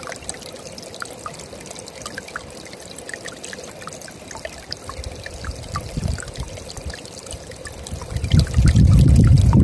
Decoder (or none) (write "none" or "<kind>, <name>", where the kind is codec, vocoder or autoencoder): none